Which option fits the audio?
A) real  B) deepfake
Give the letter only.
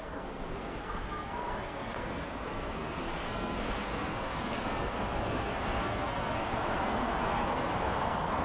B